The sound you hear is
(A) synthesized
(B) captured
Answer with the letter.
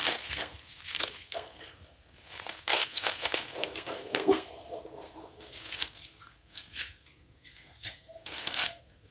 A